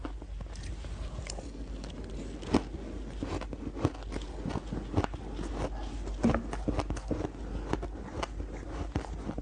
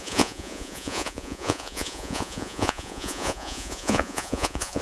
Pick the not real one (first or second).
second